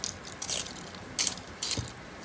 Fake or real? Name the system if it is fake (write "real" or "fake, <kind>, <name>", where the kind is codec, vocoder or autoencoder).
real